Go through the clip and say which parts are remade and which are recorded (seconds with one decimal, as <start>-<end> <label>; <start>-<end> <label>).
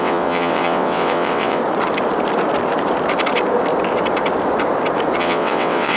0.0-1.6 remade; 1.6-5.2 recorded; 5.2-6.0 remade